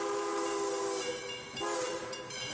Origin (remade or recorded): recorded